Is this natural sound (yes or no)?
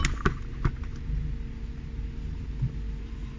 yes